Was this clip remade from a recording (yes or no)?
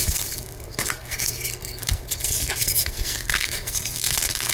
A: yes